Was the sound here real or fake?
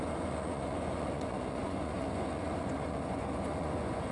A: fake